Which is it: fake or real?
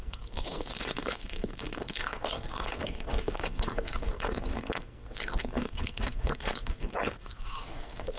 fake